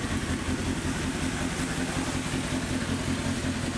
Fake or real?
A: real